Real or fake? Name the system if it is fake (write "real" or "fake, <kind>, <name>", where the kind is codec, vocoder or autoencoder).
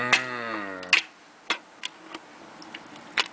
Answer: real